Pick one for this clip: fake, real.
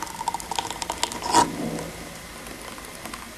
real